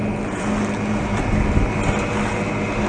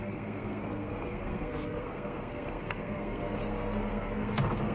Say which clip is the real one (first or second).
first